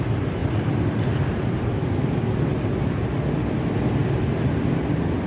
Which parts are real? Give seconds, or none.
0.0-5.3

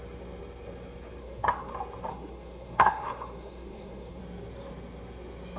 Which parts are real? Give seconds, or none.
0.0-1.2; 1.7-2.1; 4.2-5.6

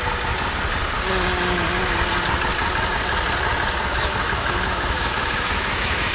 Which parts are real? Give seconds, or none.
0.0-3.9

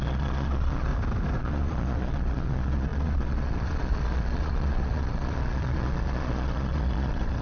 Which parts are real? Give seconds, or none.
0.9-1.4

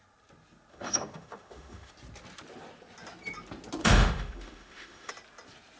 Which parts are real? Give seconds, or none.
0.0-0.7; 1.9-3.8; 5.1-5.8

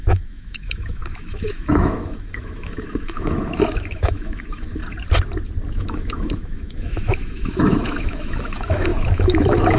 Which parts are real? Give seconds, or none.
4.8-5.7

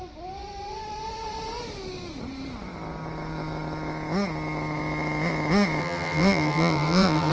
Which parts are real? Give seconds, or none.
0.0-5.8